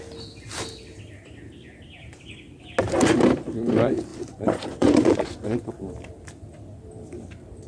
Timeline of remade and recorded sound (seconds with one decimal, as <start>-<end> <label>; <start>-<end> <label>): 0.0-4.1 recorded; 4.1-5.7 remade; 5.7-7.7 recorded